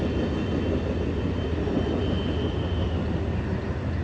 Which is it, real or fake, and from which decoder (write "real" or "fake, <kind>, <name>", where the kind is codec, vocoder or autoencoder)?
real